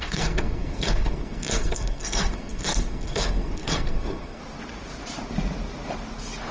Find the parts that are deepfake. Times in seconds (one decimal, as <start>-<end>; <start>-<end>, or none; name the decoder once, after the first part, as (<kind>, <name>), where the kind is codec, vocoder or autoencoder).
0.0-4.4 (codec, SNAC)